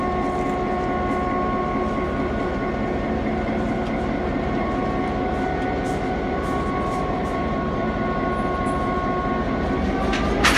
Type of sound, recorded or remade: recorded